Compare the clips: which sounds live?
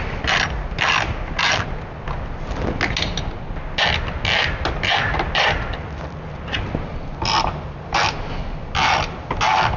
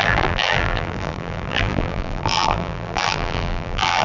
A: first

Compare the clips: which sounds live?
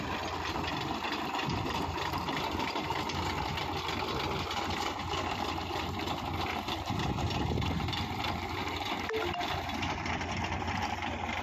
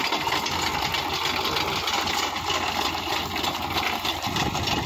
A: second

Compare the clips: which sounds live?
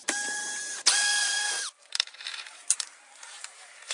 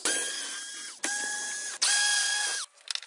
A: second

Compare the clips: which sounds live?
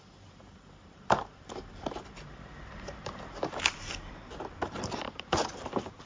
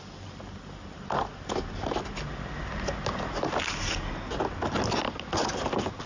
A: second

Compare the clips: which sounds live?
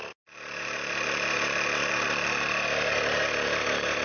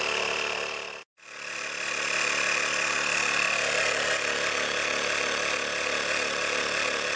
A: second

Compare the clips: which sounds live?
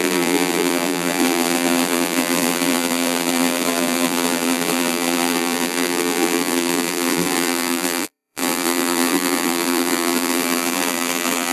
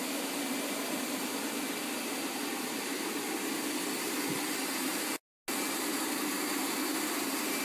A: second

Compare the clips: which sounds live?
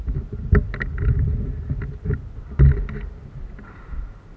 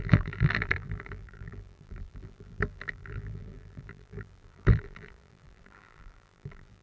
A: first